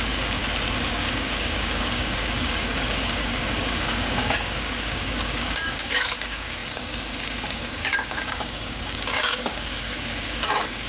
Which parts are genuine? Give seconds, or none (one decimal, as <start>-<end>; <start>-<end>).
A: 0.4-0.9